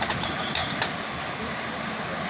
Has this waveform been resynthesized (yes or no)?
no